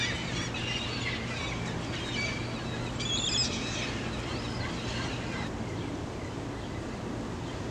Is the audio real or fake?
real